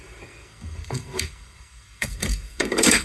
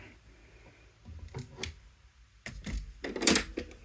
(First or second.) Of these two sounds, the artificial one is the first